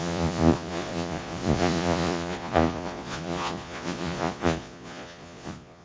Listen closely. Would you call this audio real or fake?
fake